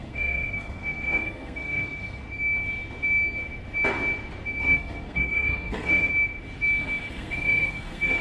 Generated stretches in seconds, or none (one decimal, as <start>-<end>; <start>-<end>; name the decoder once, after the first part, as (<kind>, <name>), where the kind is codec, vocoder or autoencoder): 0.0-2.2 (codec, SNAC); 4.6-6.1; 7.1-8.2